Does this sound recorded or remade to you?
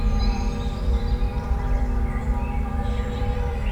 remade